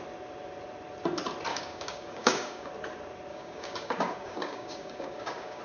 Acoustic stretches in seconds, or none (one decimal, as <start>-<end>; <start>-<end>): 0.0-1.5; 2.7-3.3